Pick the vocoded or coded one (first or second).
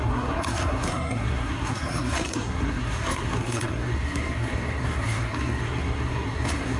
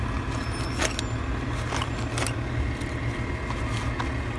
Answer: first